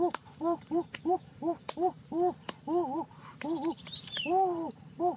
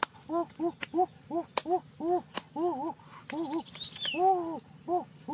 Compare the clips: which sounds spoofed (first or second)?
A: first